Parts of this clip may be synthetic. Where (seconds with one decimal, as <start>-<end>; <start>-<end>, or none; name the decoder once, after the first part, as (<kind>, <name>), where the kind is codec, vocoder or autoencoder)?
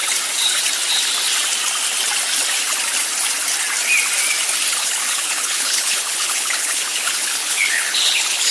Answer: 4.7-8.5 (codec, HILCodec)